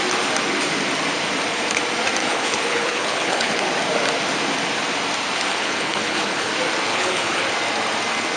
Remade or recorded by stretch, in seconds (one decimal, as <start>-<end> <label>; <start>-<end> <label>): 0.0-2.2 recorded; 2.2-3.6 remade; 3.6-5.5 recorded; 5.5-6.5 remade; 6.5-6.9 recorded; 6.9-7.4 remade; 7.4-8.4 recorded